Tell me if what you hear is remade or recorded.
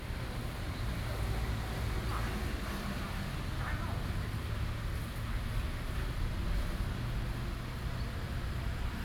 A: recorded